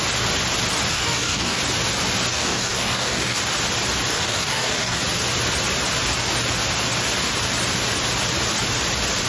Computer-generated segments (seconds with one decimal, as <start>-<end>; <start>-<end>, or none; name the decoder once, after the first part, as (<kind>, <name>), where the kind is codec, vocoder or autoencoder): 0.9-1.6 (codec, DAC); 2.3-3.4; 4.1-5.0